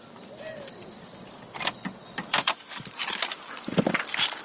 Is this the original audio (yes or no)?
no